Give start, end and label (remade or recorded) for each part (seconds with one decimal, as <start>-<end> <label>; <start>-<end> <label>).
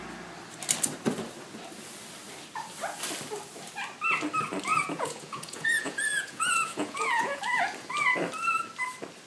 0.0-4.7 recorded; 4.7-7.4 remade; 7.4-9.3 recorded